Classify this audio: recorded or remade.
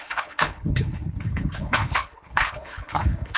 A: remade